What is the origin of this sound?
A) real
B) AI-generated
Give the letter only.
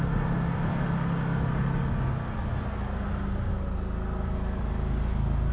A